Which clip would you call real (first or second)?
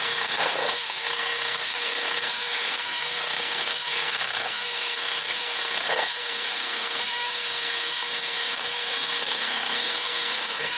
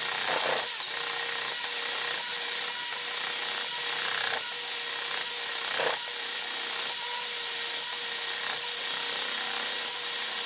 second